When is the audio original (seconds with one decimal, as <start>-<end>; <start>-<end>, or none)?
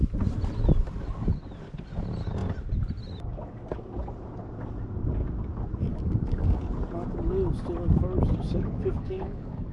0.0-5.9; 6.6-9.0